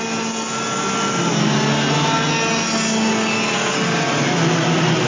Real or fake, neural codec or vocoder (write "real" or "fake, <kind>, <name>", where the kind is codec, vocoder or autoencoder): real